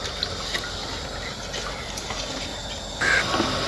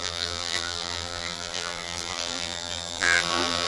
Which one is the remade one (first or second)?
second